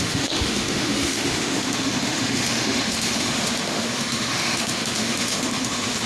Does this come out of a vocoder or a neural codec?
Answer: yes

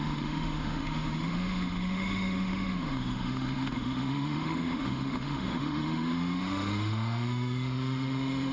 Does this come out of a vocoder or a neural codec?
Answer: yes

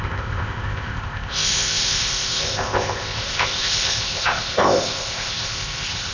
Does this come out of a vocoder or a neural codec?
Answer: yes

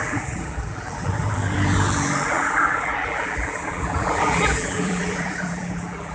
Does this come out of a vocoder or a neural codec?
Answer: yes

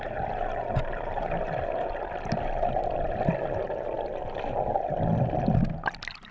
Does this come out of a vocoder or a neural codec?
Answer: no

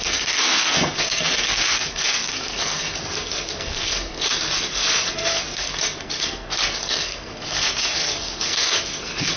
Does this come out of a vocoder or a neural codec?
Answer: yes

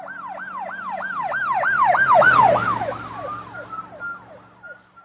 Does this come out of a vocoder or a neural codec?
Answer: no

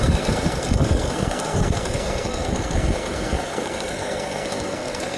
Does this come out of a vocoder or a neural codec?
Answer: yes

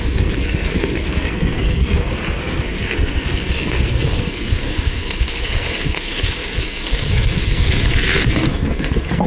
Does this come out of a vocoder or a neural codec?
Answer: yes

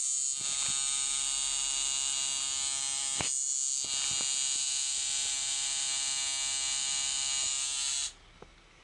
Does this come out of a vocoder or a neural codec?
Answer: no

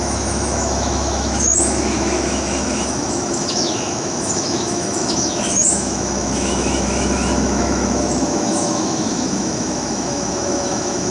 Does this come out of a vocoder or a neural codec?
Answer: yes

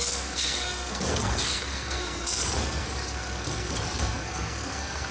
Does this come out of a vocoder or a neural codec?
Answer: yes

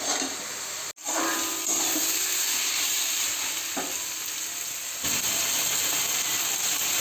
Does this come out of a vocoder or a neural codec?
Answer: no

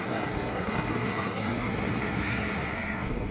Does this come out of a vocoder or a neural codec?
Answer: yes